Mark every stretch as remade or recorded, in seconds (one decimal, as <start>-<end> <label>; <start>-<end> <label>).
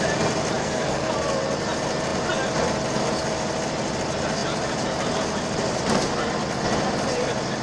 0.0-0.6 recorded; 0.6-1.1 remade; 1.1-7.6 recorded